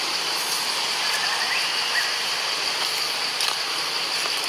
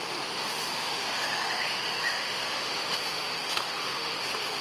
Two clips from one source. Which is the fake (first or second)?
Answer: second